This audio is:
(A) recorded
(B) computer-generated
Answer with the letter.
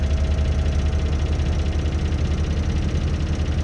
A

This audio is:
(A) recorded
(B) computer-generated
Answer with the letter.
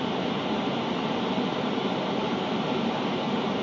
B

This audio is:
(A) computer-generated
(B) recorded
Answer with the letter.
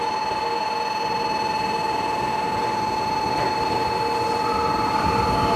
B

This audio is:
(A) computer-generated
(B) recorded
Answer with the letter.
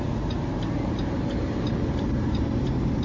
A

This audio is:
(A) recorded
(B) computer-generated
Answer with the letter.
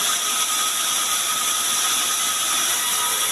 A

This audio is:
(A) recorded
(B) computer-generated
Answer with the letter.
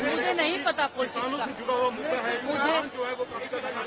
A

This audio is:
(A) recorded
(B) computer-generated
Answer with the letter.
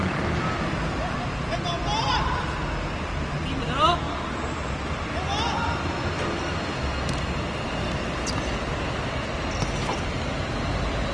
A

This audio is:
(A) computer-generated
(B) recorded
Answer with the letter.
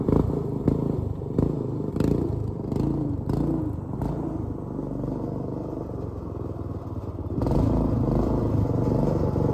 A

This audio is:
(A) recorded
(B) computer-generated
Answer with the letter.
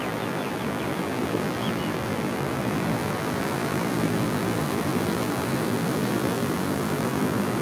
B